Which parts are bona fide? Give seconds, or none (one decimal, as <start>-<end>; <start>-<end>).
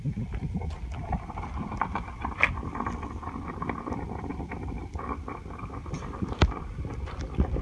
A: none